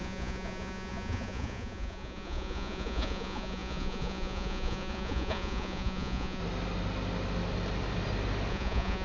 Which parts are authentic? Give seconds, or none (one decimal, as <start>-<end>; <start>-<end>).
6.4-8.5